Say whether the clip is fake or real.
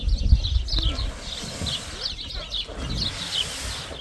real